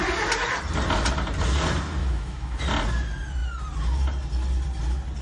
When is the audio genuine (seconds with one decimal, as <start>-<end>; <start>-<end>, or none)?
0.0-2.0; 2.6-5.2